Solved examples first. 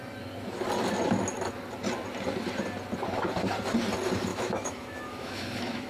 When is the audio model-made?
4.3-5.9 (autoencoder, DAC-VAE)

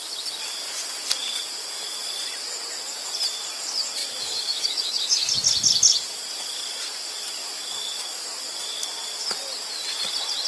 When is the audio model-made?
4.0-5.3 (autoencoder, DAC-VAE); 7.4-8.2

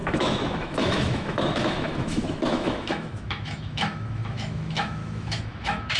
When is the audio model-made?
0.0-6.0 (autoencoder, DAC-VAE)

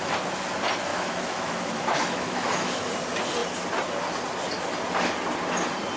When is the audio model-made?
0.9-2.9 (autoencoder, DAC-VAE)

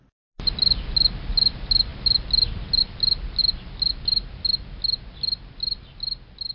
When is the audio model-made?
none